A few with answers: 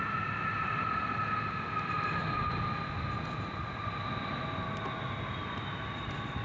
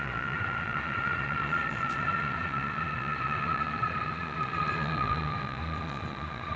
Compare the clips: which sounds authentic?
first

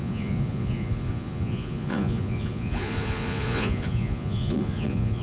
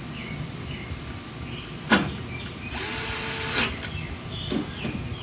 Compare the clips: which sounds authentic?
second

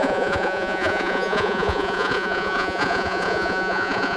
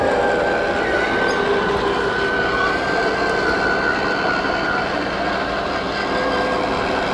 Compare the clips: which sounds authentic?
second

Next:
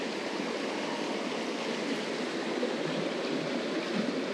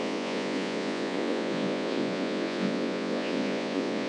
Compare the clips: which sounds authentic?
first